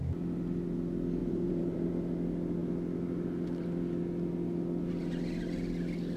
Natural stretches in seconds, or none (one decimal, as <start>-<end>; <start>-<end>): 0.0-1.2; 1.9-6.2